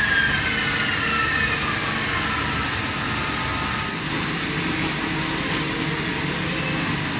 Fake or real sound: real